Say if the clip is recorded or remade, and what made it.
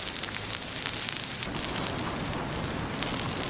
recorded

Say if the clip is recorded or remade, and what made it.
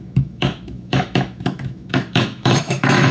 remade, autoencoder, DAC-VAE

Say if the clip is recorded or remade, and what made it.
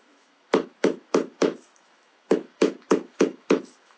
remade, autoencoder, DAC-VAE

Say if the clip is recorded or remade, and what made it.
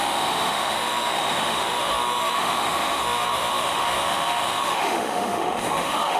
remade, autoencoder, DAC-VAE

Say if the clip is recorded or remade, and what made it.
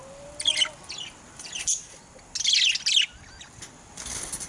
recorded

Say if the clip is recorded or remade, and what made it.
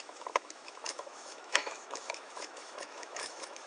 remade, autoencoder, DAC-VAE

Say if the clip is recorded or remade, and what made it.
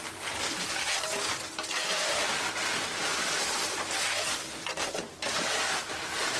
recorded